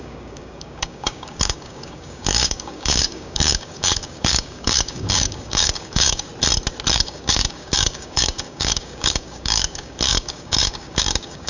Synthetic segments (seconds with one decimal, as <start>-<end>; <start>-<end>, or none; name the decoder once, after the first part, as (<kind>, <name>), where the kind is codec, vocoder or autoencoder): 0.0-6.3 (codec, DAC); 6.9-11.5